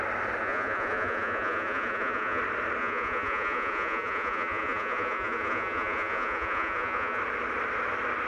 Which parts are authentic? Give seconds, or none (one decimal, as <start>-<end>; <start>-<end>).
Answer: 0.0-0.4; 2.4-2.8; 7.2-8.3